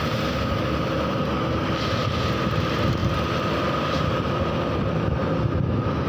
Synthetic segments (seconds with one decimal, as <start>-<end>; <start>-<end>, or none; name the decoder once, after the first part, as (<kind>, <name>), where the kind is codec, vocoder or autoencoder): 3.0-4.8 (vocoder, BigVGAN v2)